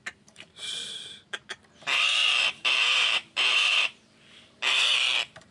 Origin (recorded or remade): remade